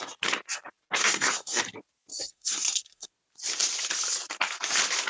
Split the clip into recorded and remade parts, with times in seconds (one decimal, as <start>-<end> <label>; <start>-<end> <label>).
0.0-1.0 recorded; 1.0-1.6 remade; 1.6-2.1 recorded; 2.1-3.1 remade; 3.1-5.1 recorded